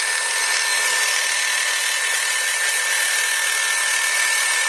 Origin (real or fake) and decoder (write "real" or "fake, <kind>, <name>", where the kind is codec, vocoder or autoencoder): real